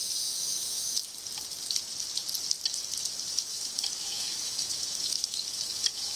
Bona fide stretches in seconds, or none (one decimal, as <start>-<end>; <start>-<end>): 1.0-3.3